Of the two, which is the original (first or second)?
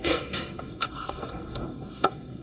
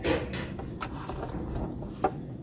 second